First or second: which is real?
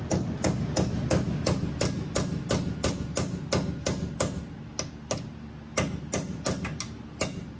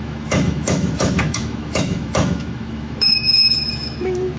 first